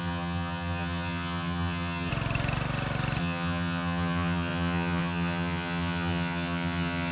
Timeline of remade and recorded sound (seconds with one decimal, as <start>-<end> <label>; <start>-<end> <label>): 0.0-2.1 remade; 2.1-3.2 recorded; 3.2-7.1 remade